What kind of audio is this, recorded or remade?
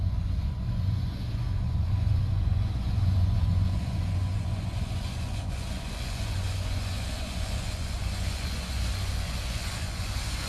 remade